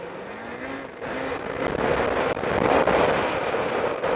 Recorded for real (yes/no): yes